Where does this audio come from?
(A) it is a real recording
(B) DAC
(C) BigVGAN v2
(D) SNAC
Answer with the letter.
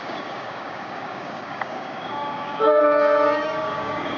B